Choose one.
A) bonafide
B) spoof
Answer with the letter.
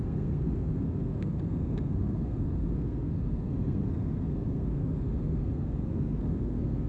B